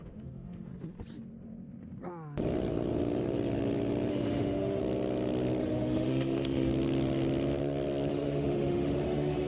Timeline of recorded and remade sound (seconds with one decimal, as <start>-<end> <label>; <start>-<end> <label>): 0.0-0.7 remade; 0.7-4.1 recorded; 4.1-4.8 remade; 4.8-5.6 recorded; 5.6-6.7 remade; 6.7-8.1 recorded; 8.1-9.5 remade